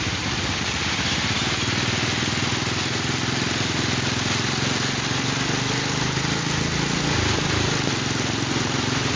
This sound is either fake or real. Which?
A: real